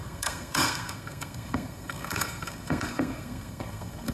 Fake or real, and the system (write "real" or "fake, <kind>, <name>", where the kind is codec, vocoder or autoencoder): fake, codec, SNAC